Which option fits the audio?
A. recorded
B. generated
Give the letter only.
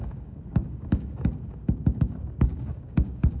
B